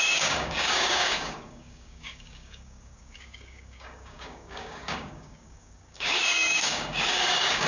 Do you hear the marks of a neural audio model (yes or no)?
yes